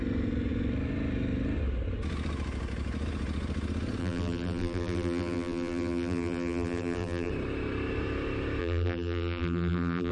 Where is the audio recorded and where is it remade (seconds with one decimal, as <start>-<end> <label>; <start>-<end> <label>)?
0.0-4.0 recorded; 4.0-7.3 remade; 7.3-8.6 recorded; 8.6-10.1 remade